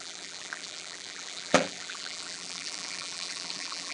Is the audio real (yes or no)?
no